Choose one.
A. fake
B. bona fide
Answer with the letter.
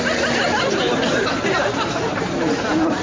B